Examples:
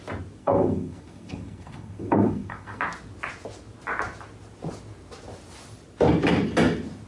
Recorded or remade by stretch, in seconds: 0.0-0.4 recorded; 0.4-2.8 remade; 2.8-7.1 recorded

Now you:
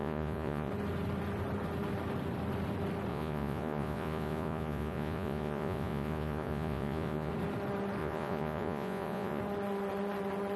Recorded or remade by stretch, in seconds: 0.0-0.7 remade; 0.7-3.1 recorded; 3.1-7.3 remade; 7.3-8.0 recorded; 8.0-9.4 remade; 9.4-10.6 recorded

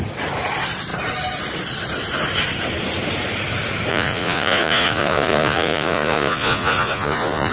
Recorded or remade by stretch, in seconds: 0.0-3.9 recorded; 3.9-7.5 remade

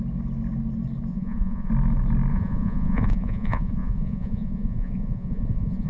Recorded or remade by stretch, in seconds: 0.0-1.1 recorded; 1.1-1.7 remade; 1.7-2.3 recorded; 2.3-5.9 remade